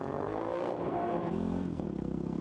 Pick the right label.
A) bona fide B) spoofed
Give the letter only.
B